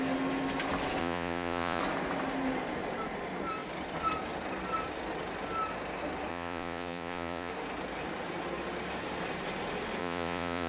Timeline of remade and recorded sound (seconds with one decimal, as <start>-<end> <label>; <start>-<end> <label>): 0.0-1.0 recorded; 1.0-1.8 remade; 1.8-6.3 recorded; 6.3-7.5 remade; 7.5-10.0 recorded; 10.0-10.7 remade